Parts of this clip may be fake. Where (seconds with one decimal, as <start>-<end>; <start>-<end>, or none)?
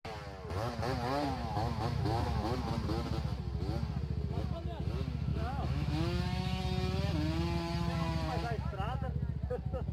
1.4-2.6; 5.3-6.6